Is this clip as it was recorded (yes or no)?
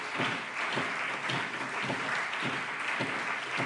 yes